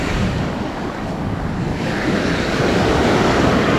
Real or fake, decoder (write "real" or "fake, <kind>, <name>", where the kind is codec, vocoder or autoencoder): fake, codec, DAC